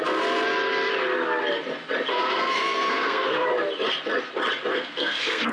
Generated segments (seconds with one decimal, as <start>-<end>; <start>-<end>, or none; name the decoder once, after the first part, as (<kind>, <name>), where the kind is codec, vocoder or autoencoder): 2.1-3.4 (codec, SNAC); 4.7-5.5